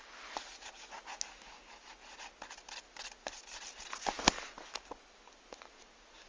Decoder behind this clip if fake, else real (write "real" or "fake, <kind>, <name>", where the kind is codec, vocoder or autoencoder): real